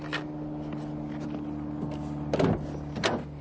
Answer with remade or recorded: recorded